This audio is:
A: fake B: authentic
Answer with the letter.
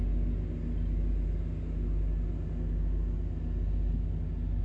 B